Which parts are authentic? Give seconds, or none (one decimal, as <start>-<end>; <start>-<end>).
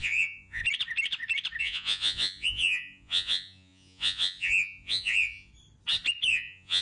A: 0.6-1.6; 5.5-6.3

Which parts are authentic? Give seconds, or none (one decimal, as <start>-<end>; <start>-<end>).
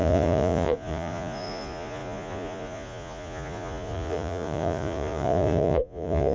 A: none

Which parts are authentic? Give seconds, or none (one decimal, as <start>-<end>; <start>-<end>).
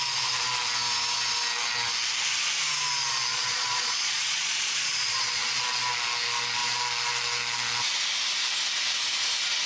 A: 0.0-3.3; 5.6-9.7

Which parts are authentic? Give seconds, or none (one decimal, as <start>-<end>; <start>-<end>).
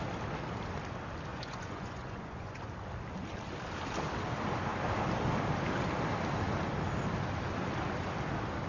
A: 0.0-1.3; 2.6-8.7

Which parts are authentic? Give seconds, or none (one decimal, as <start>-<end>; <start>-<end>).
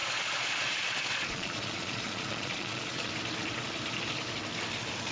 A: 3.1-5.1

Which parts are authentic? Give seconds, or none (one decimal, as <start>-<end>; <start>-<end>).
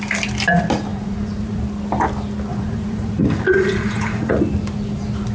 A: 0.0-0.9; 1.6-2.5; 4.4-5.3